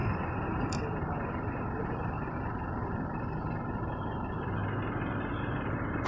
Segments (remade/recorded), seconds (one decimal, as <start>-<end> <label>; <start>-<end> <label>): 0.0-1.8 recorded; 1.8-4.6 remade; 4.6-5.5 recorded; 5.5-6.1 remade